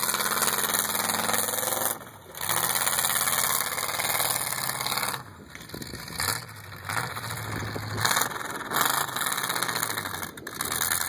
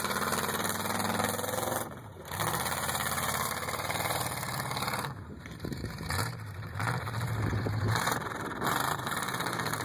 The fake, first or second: second